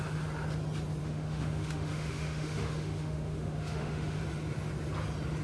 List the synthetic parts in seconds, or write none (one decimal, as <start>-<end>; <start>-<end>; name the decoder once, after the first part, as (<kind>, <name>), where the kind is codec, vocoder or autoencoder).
1.0-4.2 (autoencoder, DAC-VAE)